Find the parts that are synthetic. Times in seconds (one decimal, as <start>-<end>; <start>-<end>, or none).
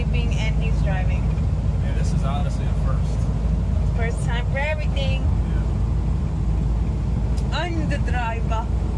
none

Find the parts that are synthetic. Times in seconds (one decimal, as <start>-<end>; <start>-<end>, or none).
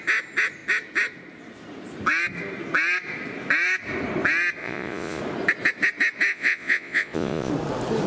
4.6-5.2; 6.3-7.5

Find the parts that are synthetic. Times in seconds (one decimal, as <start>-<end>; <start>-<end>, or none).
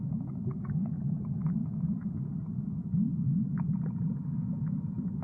0.0-5.2